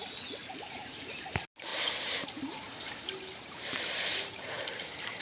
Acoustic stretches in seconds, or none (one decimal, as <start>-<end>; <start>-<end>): 0.0-0.4; 1.0-1.7; 4.5-5.2